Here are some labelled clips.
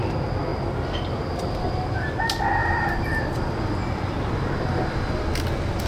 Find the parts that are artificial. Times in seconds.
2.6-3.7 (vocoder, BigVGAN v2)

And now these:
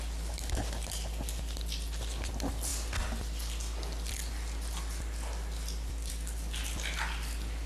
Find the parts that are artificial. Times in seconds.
none

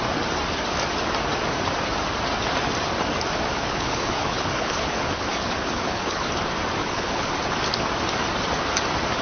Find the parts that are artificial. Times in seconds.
3.5-6.3 (codec, HILCodec); 6.8-7.3

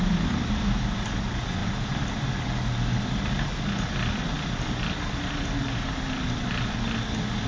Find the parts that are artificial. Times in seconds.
none

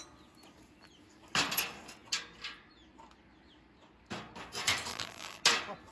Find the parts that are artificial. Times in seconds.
4.9-5.4 (vocoder, BigVGAN v2)